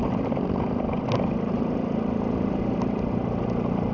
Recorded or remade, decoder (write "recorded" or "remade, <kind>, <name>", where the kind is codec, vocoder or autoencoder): recorded